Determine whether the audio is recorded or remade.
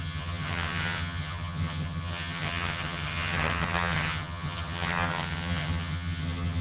remade